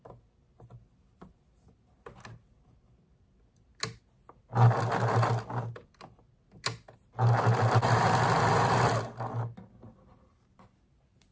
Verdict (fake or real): real